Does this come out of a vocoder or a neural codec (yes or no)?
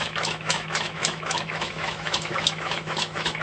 yes